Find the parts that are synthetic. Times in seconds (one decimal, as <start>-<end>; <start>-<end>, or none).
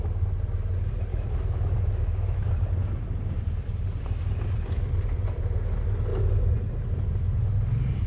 1.1-2.5